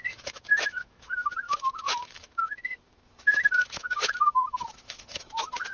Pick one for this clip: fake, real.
fake